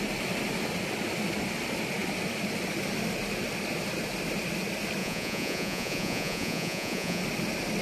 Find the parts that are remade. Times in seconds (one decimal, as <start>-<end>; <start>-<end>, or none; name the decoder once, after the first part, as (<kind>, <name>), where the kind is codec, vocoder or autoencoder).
5.0-7.2 (vocoder, Vocos)